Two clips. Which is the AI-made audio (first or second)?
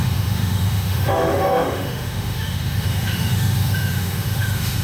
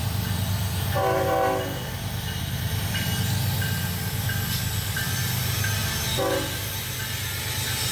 first